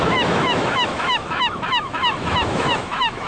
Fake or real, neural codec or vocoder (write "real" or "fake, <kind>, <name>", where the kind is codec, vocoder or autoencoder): fake, autoencoder, DAC-VAE